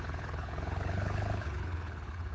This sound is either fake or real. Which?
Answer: fake